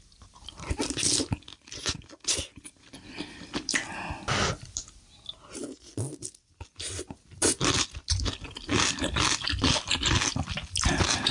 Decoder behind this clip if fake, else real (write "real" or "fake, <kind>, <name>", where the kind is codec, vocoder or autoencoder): real